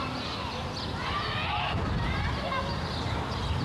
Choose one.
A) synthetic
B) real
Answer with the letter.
B